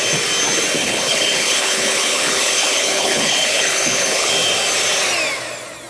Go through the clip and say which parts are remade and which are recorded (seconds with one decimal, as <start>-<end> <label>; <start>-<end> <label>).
0.0-0.8 recorded; 0.8-4.3 remade; 4.3-5.9 recorded